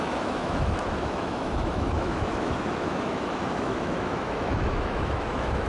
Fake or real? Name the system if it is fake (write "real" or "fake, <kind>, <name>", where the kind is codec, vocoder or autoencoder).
fake, autoencoder, DAC-VAE